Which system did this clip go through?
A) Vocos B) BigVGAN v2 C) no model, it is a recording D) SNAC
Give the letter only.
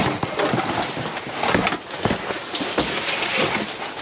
C